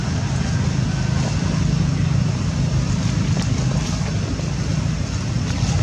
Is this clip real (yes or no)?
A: yes